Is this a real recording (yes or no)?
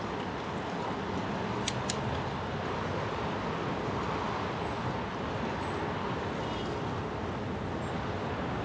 yes